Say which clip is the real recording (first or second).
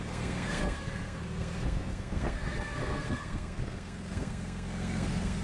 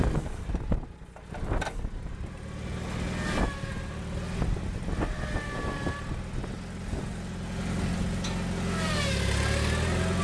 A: second